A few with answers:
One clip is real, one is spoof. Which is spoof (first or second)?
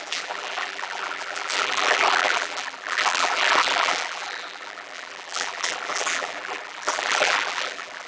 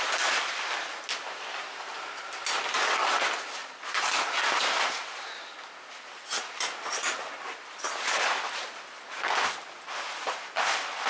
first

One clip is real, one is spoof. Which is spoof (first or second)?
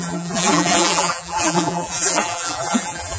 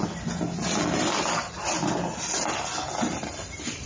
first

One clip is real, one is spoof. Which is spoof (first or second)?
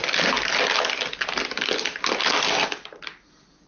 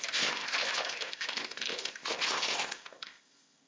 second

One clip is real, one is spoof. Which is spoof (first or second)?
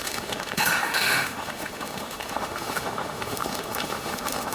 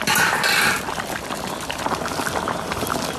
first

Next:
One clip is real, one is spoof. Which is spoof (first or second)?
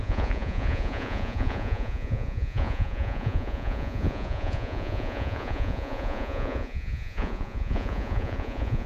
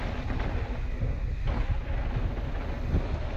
first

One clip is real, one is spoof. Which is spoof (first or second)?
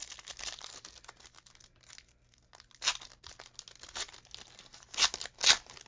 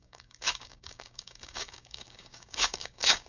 second